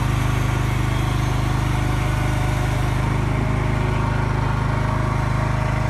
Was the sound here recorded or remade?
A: recorded